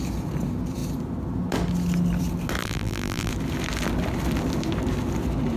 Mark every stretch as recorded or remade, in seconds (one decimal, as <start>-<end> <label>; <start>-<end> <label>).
0.0-2.6 recorded; 2.6-3.3 remade; 3.3-5.6 recorded